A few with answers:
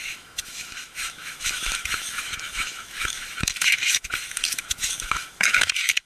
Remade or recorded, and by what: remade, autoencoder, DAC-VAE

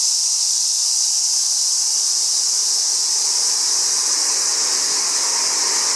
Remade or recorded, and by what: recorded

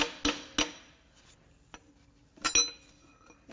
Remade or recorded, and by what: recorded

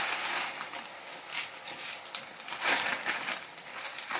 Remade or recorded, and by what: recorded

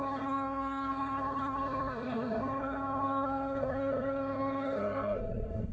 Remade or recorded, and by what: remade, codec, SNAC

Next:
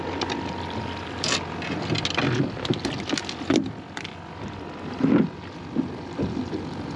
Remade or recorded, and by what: recorded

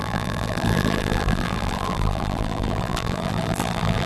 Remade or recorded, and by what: remade, vocoder, BigVGAN v2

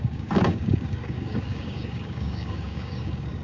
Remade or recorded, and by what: remade, codec, DAC